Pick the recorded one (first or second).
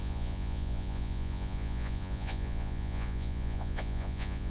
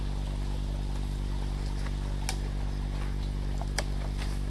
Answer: second